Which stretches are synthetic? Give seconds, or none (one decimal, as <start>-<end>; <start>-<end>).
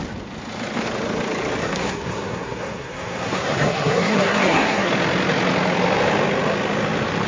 1.6-4.9